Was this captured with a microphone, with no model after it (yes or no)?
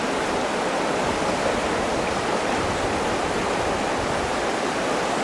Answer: yes